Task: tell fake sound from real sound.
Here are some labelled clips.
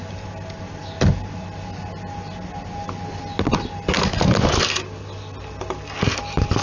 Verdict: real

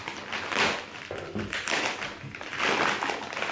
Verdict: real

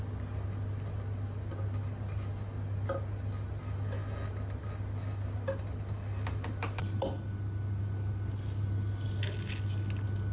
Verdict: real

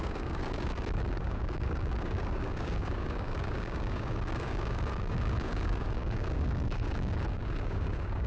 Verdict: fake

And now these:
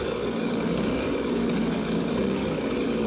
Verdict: fake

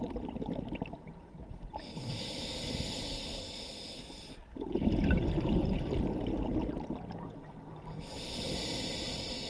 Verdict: real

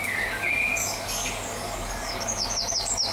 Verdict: fake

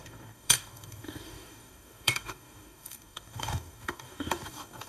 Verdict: fake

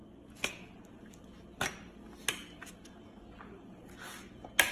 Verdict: real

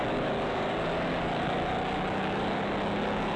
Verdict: fake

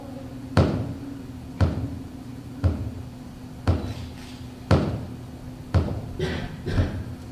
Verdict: real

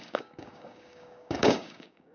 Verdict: fake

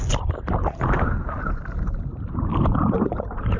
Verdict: real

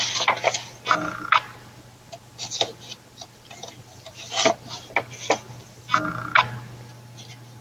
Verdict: real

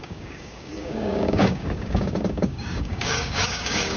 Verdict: fake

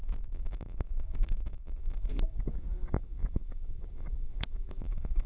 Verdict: fake